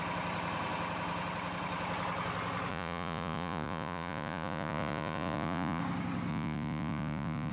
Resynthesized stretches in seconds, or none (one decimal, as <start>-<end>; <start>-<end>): 2.7-5.8; 6.3-7.5